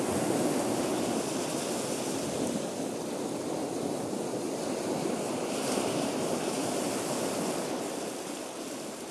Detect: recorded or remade recorded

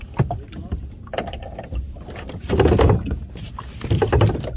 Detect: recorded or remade recorded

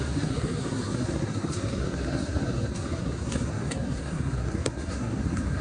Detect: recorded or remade remade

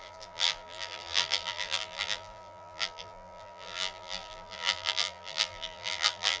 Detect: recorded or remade remade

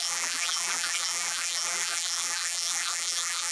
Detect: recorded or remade remade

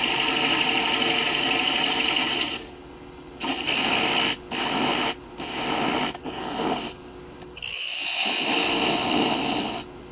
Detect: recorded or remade recorded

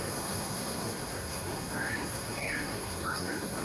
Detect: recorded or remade remade